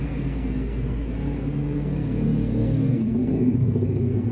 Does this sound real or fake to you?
fake